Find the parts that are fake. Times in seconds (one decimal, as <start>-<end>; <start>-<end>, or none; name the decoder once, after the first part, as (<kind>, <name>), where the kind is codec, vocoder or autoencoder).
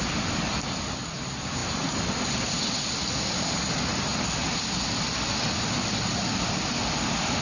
none